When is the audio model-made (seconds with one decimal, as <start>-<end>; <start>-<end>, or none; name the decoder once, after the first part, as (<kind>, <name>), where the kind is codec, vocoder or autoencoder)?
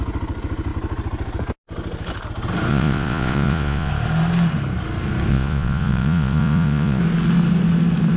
2.7-3.9 (vocoder, Vocos); 5.3-7.0